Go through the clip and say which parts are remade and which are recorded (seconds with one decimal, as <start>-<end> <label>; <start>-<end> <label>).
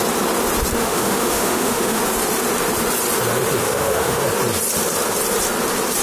0.0-0.8 recorded; 0.8-2.0 remade; 2.0-3.6 recorded; 3.6-4.2 remade; 4.2-6.0 recorded